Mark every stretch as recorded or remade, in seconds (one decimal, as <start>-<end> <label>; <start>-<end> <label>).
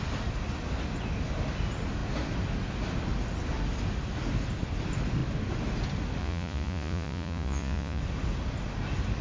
0.0-6.2 recorded; 6.2-8.0 remade; 8.0-9.2 recorded